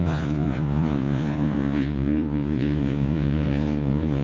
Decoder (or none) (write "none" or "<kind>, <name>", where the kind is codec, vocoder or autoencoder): vocoder, Vocos